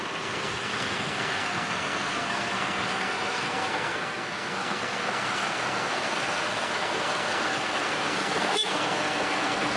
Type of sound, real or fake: fake